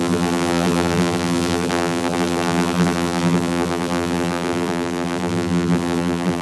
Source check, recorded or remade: remade